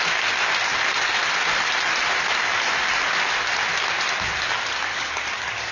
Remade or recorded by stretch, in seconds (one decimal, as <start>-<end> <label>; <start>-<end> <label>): 0.0-4.9 recorded; 4.9-5.7 remade